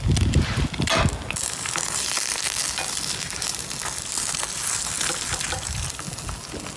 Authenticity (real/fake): real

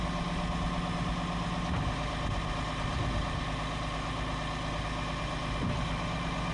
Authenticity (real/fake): real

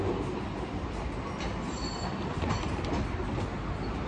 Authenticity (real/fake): real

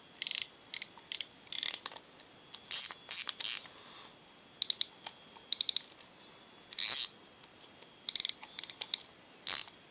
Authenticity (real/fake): real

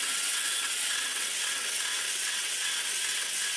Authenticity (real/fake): fake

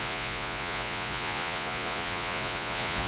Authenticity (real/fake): fake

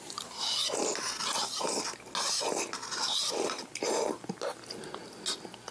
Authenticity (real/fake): real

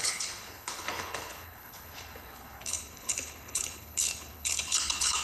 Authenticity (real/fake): fake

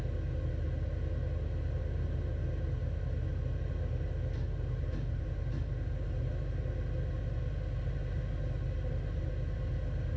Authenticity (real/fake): real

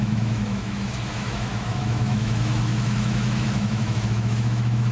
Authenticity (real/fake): fake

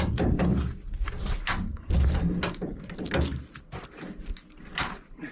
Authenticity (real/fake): real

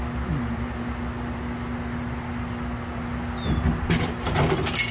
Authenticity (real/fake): real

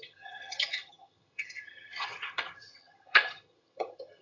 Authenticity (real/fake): fake